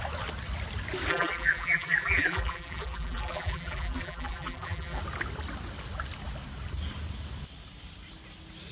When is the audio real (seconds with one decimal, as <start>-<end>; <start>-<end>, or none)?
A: 0.0-1.1; 5.0-8.7